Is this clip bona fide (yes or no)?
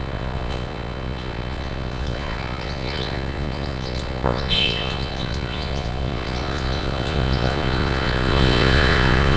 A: no